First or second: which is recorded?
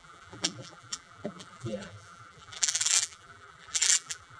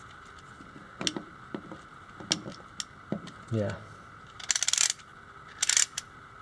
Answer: second